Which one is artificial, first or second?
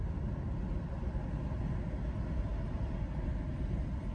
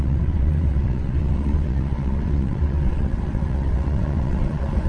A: second